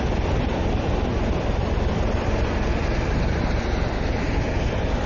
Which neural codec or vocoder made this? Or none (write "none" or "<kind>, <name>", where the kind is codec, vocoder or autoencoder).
none